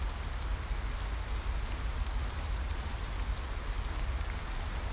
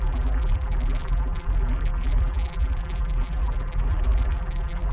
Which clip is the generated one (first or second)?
second